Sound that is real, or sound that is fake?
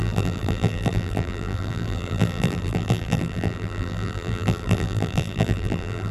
fake